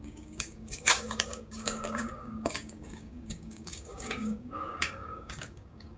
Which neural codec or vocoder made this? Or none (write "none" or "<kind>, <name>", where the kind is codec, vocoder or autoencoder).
codec, DAC